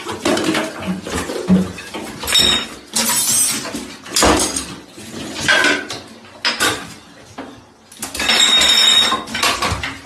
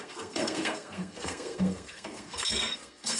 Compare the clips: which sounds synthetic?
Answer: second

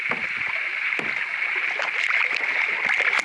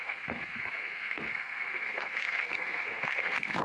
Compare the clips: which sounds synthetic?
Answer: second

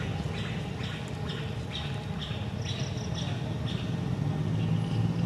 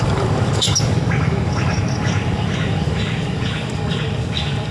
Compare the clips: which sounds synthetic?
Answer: second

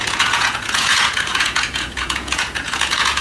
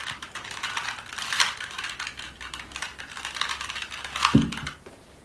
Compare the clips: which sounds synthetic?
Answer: first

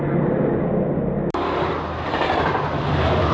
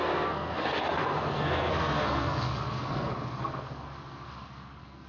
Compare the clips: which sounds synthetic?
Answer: second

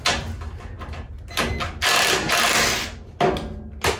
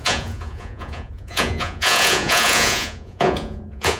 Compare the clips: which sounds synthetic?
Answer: second